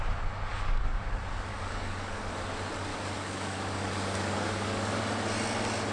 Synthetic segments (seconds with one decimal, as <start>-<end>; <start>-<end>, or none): 0.5-1.0; 1.5-2.3; 2.9-5.0

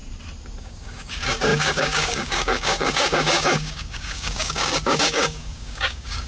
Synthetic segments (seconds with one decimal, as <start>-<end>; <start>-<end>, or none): 0.6-6.3